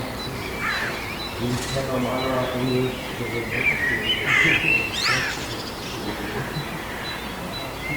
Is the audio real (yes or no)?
yes